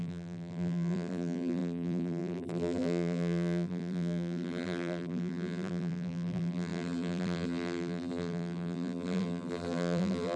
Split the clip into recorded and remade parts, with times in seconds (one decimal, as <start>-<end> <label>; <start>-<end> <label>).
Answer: 0.0-10.4 remade